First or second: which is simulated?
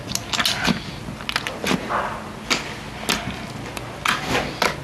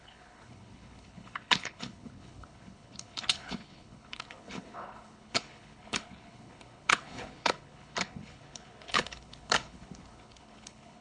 second